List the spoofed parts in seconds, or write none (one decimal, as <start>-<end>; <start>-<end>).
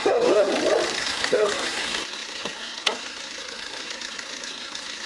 0.0-0.5; 1.0-5.1